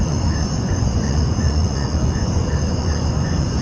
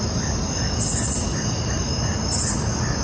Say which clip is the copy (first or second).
first